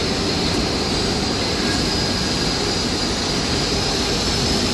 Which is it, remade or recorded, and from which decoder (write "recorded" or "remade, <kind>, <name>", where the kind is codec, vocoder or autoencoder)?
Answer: recorded